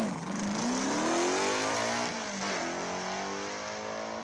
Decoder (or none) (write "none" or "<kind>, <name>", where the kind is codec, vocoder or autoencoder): none